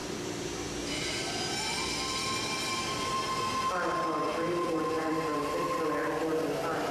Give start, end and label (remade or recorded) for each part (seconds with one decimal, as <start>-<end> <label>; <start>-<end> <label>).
0.0-3.3 remade; 3.3-4.3 recorded; 4.3-5.2 remade; 5.2-6.9 recorded